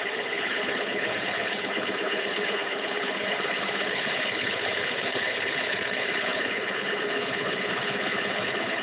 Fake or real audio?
fake